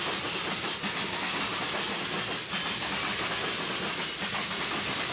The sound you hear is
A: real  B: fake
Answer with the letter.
A